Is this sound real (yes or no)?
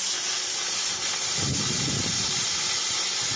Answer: yes